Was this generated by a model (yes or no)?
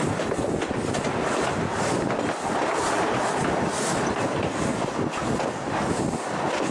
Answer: no